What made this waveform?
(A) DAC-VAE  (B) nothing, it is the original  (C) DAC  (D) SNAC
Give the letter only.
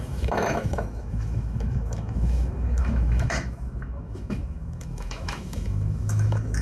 A